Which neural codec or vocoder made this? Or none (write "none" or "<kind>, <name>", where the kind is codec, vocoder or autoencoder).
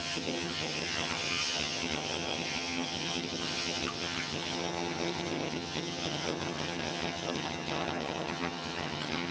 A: vocoder, HiFi-GAN